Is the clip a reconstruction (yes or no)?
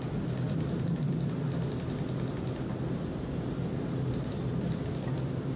no